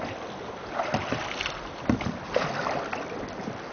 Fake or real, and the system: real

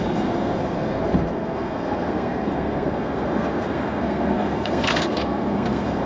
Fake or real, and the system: fake, codec, SNAC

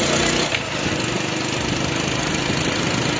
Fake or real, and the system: real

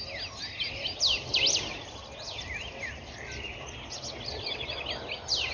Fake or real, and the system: real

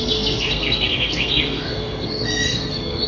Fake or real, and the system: fake, codec, SNAC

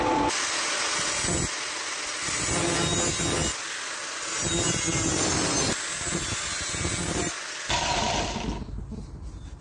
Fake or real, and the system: real